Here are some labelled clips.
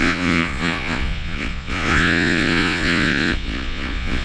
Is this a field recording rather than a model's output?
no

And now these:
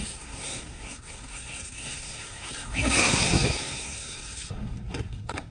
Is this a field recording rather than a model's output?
no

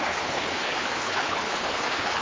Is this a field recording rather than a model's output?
no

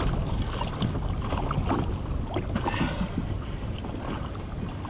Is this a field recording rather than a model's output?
yes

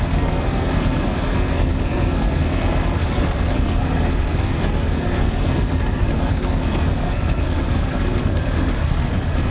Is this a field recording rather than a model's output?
no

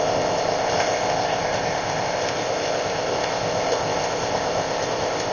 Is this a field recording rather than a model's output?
no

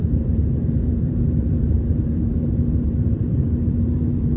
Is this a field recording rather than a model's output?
no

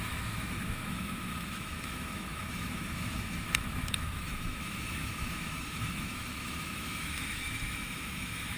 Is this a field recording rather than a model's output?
no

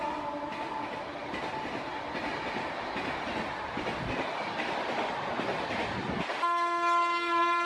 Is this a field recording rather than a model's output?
yes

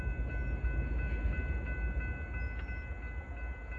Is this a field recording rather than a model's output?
yes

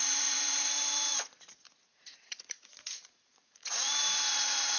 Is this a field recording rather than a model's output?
no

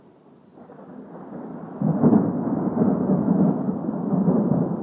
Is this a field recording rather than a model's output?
yes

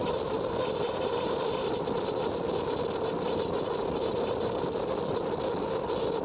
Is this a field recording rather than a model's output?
yes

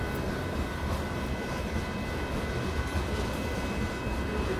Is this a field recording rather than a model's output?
yes